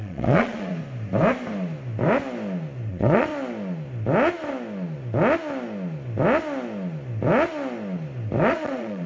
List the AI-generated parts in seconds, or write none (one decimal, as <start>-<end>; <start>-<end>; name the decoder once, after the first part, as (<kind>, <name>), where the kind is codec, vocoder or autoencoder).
0.0-0.7 (vocoder, Vocos); 2.9-3.3; 8.5-9.1